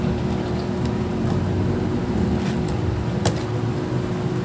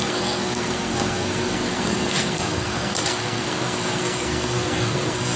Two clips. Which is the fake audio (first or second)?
second